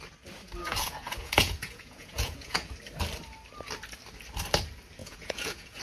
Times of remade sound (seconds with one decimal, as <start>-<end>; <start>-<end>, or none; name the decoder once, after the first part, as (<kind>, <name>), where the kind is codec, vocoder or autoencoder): 0.6-2.7 (vocoder, Vocos); 5.0-5.8